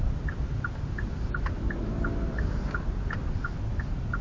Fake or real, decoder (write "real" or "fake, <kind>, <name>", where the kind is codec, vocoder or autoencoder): real